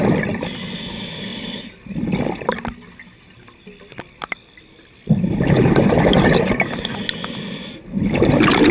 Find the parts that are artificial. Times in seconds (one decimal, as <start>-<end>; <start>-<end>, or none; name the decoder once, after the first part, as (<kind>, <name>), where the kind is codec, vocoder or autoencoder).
none